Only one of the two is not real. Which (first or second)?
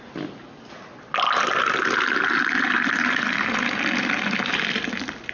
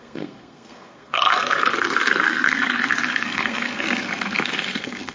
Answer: second